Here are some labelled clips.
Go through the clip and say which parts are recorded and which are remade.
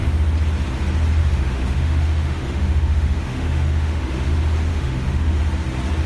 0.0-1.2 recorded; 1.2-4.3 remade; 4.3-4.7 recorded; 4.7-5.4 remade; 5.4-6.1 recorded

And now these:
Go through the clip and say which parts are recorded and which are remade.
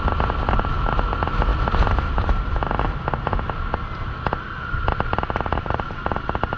0.0-6.6 recorded